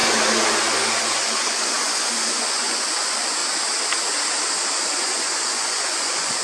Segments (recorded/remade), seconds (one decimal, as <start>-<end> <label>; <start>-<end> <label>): 0.0-1.0 recorded; 1.0-3.4 remade; 3.4-4.8 recorded; 4.8-6.4 remade